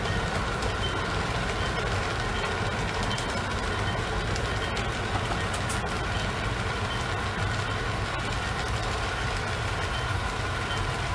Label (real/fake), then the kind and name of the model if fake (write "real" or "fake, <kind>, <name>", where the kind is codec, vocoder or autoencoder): real